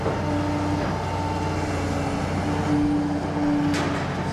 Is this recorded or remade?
recorded